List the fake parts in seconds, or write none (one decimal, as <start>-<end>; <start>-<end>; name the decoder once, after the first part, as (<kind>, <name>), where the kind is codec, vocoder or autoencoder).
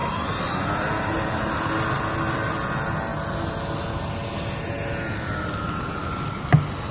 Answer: none